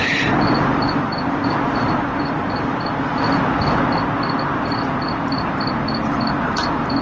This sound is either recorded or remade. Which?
recorded